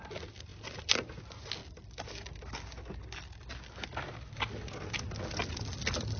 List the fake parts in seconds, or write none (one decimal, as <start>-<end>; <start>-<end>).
none